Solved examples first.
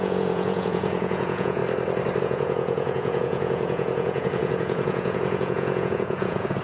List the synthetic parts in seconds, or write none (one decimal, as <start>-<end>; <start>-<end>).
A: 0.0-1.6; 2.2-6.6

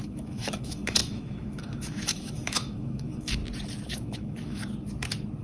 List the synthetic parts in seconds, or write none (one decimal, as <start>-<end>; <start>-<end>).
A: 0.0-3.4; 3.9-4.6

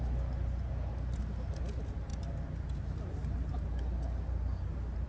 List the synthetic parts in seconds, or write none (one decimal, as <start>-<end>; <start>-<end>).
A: none

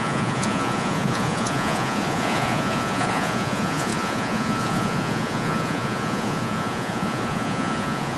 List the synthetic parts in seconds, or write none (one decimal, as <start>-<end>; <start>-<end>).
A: 0.0-8.2